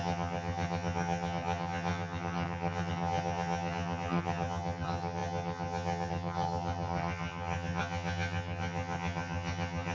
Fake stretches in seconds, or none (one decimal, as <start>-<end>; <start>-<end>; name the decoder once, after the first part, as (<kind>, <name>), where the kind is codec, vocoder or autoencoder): 0.0-9.9 (vocoder, HiFi-GAN)